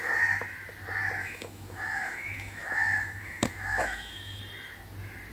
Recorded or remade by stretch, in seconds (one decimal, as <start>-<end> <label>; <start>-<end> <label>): 0.0-1.2 recorded; 1.2-4.4 remade; 4.4-5.3 recorded